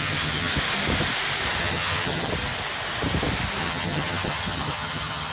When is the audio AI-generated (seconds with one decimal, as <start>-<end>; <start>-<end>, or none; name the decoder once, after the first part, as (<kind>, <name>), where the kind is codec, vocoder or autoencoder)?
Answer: 0.0-0.5 (vocoder, HiFi-GAN); 1.6-2.3; 3.6-5.3